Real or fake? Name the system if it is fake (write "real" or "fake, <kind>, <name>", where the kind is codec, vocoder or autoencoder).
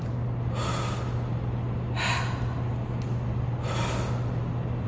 real